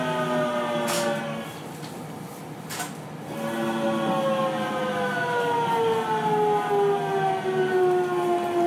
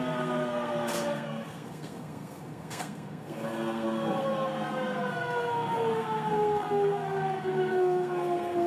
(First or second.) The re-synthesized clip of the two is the second